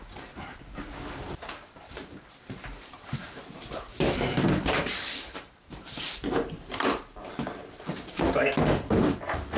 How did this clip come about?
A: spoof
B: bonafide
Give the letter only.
A